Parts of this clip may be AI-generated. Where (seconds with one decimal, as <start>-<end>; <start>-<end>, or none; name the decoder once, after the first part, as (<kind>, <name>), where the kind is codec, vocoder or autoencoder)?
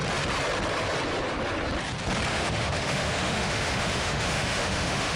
2.3-5.2 (autoencoder, DAC-VAE)